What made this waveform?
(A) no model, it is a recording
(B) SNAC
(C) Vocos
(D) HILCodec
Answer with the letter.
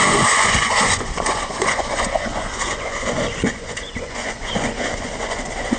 C